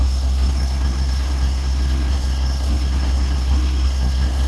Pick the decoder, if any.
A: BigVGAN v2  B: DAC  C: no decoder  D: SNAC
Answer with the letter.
D